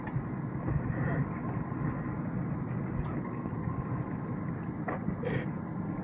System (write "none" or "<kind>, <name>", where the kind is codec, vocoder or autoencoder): none